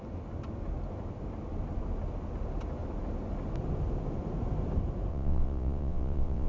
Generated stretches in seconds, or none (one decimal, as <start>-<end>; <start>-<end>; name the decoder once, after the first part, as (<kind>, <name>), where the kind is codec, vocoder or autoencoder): 5.1-6.5 (vocoder, WaveNeXt)